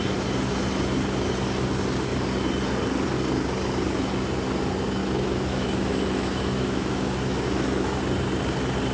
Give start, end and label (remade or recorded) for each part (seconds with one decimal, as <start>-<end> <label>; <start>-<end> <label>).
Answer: 0.0-5.0 recorded; 5.0-8.0 remade; 8.0-8.9 recorded